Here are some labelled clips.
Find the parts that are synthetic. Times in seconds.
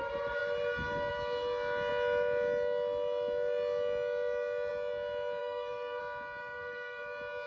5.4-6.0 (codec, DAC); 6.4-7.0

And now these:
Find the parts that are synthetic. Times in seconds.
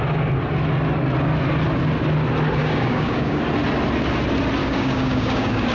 2.6-3.4 (codec, DAC); 4.6-5.7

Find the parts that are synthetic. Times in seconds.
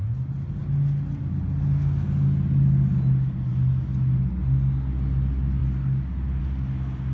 none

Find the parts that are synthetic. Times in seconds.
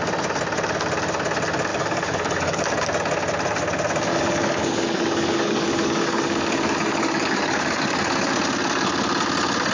1.7-2.6 (codec, DAC); 4.1-8.3